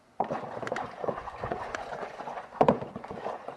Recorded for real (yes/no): no